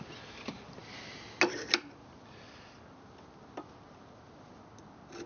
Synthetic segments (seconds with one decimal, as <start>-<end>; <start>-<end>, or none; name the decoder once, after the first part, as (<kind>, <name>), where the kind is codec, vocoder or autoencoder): none

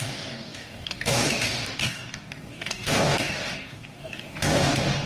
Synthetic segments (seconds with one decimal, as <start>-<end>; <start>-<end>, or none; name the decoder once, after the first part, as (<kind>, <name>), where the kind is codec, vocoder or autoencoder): 0.0-5.1 (codec, DAC)

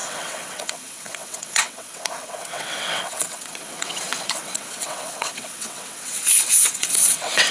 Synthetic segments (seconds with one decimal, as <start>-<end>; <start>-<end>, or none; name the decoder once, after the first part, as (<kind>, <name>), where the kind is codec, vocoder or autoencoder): 0.0-7.5 (vocoder, WaveNeXt)

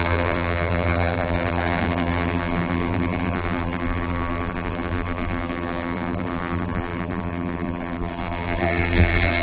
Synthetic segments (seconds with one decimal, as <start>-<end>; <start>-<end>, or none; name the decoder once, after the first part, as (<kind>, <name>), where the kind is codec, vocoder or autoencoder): 0.0-9.4 (vocoder, BigVGAN v2)

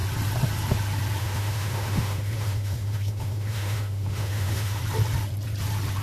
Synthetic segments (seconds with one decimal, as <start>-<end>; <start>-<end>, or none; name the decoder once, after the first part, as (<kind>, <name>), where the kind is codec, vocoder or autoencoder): 1.2-4.8 (autoencoder, DAC-VAE)

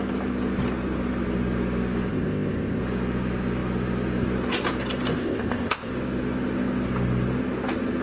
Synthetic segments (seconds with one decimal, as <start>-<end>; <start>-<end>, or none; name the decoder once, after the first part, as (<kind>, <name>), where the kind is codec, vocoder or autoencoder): 2.1-2.8 (codec, ZipCodec); 5.2-5.9

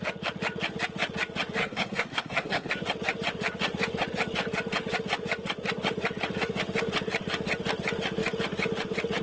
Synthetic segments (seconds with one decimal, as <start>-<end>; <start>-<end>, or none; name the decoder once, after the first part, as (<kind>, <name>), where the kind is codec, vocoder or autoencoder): 1.6-2.7 (codec, SNAC)